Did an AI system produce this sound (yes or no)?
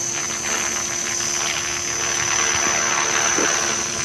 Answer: no